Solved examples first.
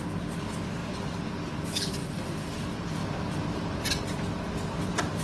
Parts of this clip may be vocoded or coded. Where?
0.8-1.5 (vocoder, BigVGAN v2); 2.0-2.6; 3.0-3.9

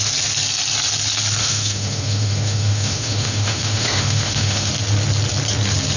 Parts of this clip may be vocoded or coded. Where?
1.4-4.7 (autoencoder, DAC-VAE)

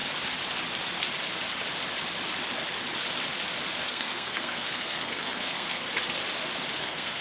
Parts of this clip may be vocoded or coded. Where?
3.8-5.9 (codec, SNAC); 6.8-7.2

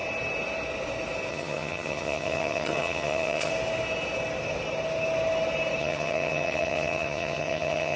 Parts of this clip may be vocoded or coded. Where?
1.3-3.5 (vocoder, HiFi-GAN); 5.8-8.0

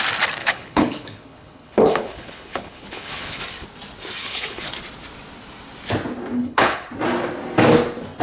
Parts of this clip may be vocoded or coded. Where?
0.4-3.4 (codec, HILCodec); 4.2-4.7; 6.4-6.9

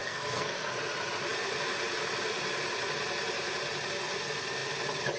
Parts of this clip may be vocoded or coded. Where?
0.0-0.7 (codec, SNAC)

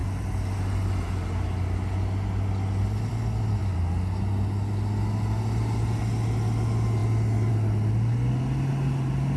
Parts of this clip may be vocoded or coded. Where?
none

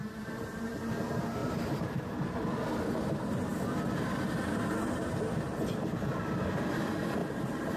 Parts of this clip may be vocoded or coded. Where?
0.0-0.9 (vocoder, BigVGAN v2); 1.4-2.0; 7.2-7.8